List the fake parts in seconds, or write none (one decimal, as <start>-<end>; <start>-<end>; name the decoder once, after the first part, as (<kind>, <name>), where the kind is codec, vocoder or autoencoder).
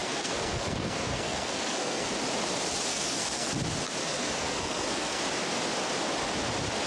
0.0-2.1 (codec, SNAC); 2.9-3.5; 4.0-5.2